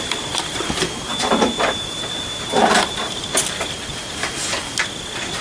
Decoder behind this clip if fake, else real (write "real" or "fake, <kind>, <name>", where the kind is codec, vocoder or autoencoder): real